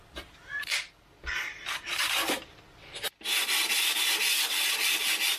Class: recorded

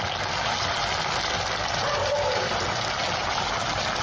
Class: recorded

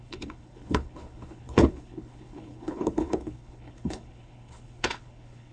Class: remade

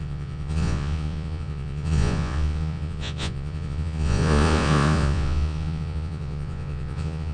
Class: remade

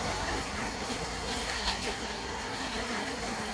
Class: remade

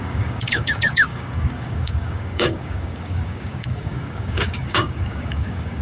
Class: remade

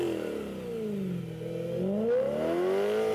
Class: recorded